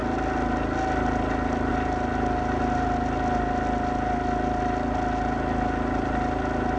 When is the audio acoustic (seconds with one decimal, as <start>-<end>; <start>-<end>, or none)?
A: 0.0-6.8